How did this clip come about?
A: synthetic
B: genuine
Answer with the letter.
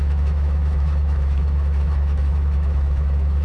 A